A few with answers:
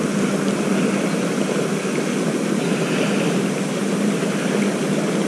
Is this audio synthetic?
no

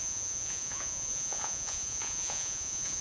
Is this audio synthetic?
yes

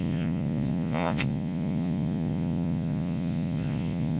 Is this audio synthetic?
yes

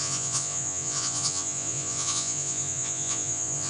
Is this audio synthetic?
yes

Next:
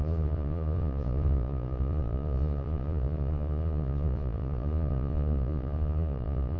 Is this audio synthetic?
yes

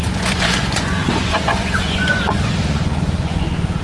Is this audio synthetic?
yes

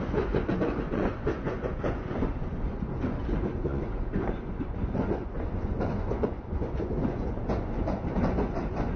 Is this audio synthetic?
yes